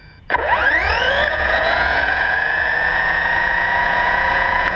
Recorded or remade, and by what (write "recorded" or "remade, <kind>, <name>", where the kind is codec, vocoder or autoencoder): remade, vocoder, Vocos